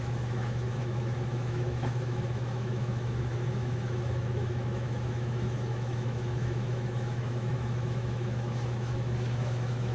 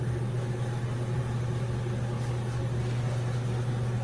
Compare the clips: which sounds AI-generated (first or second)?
first